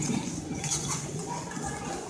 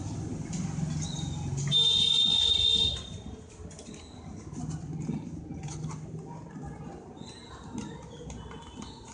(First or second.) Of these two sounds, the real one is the second